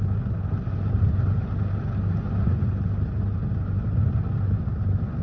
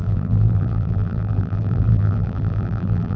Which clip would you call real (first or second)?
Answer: first